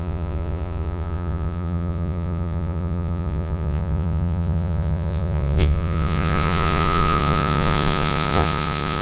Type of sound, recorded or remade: remade